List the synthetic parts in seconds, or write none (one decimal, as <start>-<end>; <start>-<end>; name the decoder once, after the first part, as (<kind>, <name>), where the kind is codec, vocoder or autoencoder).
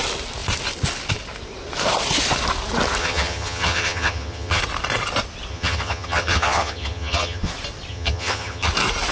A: 3.0-4.6 (vocoder, HiFi-GAN); 5.5-7.5; 7.9-8.7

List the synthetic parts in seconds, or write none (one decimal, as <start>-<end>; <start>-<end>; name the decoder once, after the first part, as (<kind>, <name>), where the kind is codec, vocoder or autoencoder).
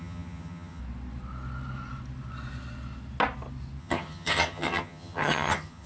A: 0.0-0.8 (vocoder, HiFi-GAN); 3.8-5.9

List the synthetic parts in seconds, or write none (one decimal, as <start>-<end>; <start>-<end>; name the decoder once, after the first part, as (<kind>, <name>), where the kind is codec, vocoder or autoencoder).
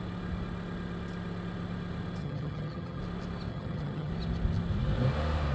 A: 2.2-3.0 (vocoder, HiFi-GAN); 3.5-4.1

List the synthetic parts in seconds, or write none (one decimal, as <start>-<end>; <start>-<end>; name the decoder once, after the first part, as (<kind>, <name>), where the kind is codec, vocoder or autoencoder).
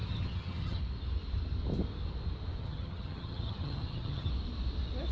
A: 0.0-0.8 (vocoder, HiFi-GAN); 2.6-4.3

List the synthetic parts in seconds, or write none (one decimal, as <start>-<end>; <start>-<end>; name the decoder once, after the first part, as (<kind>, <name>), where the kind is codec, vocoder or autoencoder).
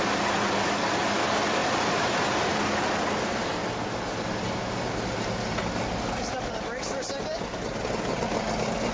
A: none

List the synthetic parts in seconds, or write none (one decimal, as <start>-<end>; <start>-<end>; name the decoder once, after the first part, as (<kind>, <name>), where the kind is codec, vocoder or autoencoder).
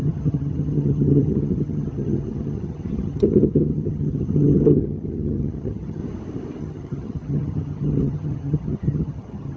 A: 0.0-6.0 (vocoder, HiFi-GAN); 6.6-9.6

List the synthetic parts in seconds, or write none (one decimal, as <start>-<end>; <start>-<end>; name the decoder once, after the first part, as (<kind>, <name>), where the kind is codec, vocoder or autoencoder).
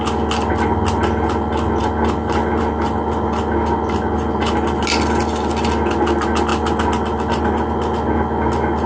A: none